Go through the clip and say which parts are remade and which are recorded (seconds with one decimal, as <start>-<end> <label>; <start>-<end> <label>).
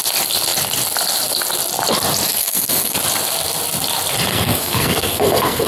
0.0-2.3 recorded; 2.3-3.0 remade; 3.0-4.3 recorded; 4.3-5.7 remade